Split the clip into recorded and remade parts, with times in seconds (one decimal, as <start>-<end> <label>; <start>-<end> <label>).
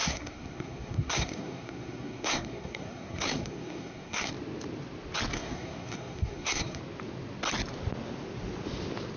0.0-4.3 remade; 4.3-5.3 recorded; 5.3-6.8 remade; 6.8-9.2 recorded